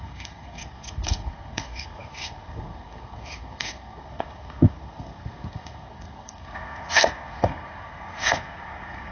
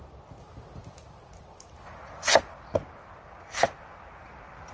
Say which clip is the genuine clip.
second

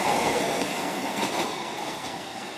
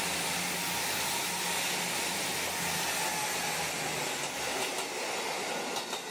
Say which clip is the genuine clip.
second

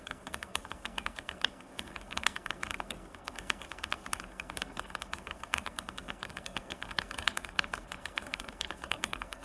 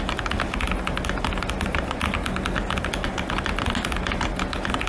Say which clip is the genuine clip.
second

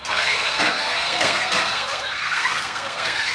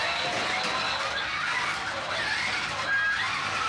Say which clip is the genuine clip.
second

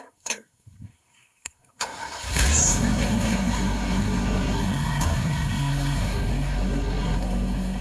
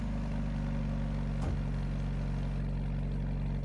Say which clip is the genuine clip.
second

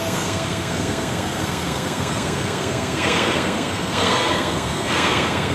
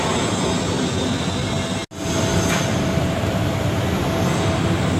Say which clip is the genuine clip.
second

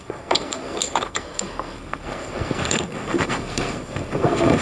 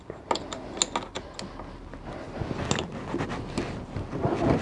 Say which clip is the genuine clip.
second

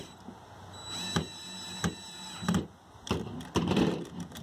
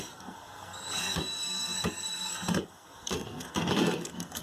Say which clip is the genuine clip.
first